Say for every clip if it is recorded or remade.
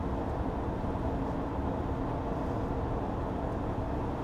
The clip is recorded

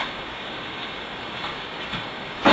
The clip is remade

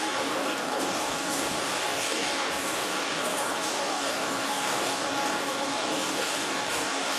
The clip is remade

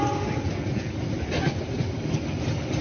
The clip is recorded